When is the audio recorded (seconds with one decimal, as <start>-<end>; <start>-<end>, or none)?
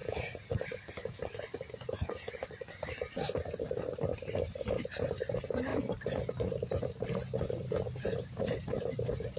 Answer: 1.2-3.8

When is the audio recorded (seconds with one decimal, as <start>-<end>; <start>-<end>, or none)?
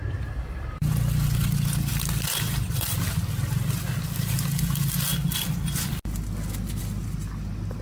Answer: 0.0-7.8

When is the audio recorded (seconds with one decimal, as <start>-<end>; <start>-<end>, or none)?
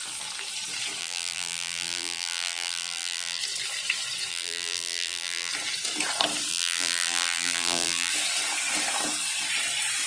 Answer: 0.0-1.0; 3.4-4.3; 5.5-6.5; 8.1-10.1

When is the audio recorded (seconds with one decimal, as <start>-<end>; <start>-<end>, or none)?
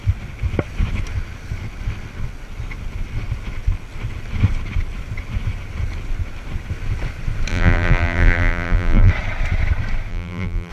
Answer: 0.0-7.5; 9.1-10.1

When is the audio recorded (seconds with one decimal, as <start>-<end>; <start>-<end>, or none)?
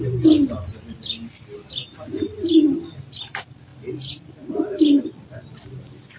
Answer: 0.0-3.7; 5.7-6.2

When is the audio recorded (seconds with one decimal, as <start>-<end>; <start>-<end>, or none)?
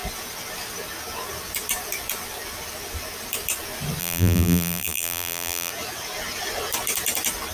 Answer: 0.0-4.0; 5.7-7.5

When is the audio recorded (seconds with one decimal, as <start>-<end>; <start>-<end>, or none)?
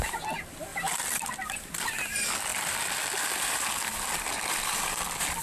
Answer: 0.0-0.7; 2.0-2.5